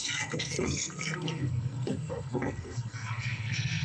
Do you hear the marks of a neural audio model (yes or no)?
yes